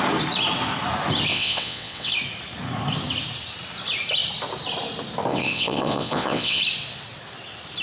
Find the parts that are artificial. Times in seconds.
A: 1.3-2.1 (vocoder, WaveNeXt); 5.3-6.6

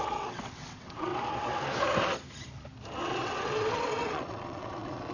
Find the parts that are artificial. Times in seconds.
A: 0.0-1.1 (vocoder, WaveNeXt); 3.0-5.1

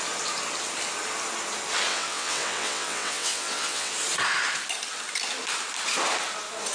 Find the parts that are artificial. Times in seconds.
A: 1.9-3.9 (vocoder, WaveNeXt)

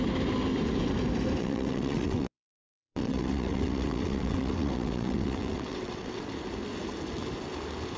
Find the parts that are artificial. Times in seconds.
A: 1.4-6.2 (vocoder, WaveNeXt)

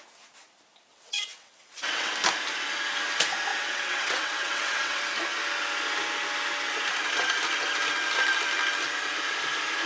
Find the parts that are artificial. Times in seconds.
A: 0.9-2.1 (vocoder, WaveNeXt); 3.5-5.0

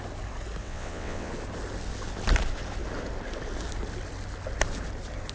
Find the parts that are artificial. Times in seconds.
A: 0.6-1.3 (vocoder, WaveNeXt)

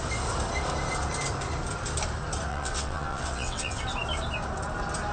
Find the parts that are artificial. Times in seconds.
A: 2.5-3.8 (vocoder, WaveNeXt)

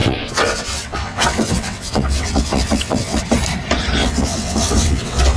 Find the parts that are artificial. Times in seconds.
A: 0.0-3.2 (vocoder, WaveNeXt); 4.0-5.4